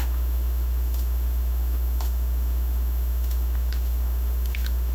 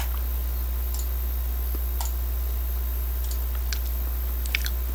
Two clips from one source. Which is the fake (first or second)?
first